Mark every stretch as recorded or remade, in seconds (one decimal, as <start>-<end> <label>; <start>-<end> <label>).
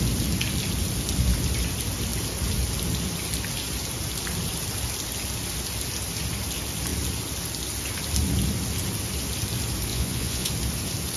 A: 0.0-9.9 recorded; 9.9-10.5 remade; 10.5-11.2 recorded